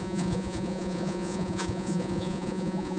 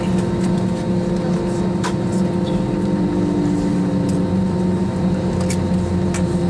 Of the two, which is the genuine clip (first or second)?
second